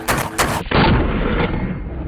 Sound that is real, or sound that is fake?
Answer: real